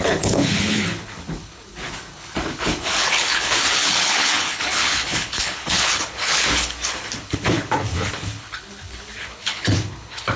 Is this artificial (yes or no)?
yes